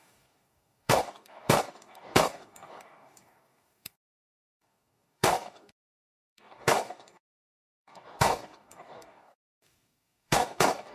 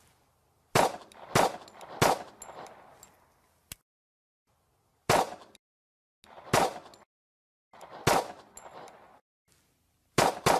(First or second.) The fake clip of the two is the first